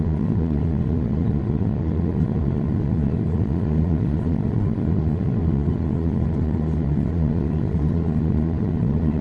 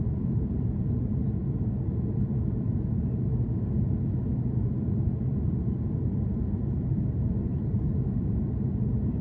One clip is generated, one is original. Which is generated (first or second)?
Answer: first